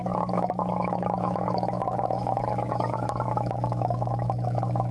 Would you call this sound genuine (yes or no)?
no